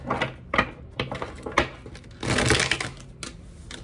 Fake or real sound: real